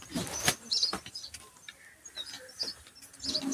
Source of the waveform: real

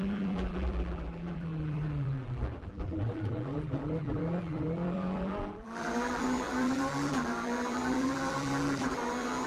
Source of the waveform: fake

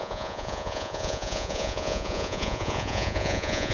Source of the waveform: fake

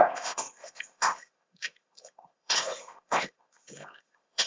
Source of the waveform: fake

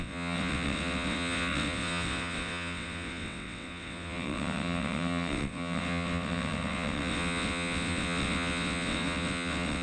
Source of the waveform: fake